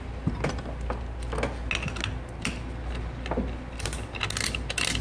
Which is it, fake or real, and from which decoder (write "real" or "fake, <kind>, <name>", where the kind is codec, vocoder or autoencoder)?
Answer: real